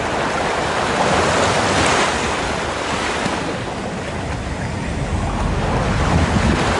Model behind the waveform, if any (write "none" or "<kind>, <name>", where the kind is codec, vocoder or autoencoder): none